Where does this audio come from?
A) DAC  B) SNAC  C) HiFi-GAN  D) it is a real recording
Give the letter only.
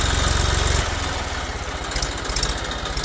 D